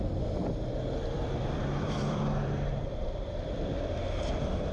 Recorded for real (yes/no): no